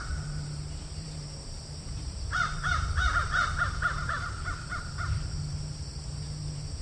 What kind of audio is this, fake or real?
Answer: fake